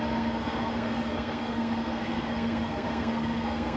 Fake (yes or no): yes